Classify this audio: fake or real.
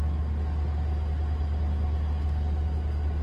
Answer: real